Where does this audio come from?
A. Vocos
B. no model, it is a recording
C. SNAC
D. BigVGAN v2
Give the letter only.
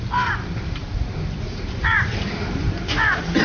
D